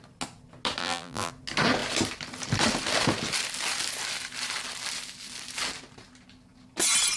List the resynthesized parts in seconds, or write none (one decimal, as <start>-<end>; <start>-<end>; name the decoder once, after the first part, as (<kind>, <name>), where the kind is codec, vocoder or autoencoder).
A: 0.8-1.3 (vocoder, BigVGAN v2)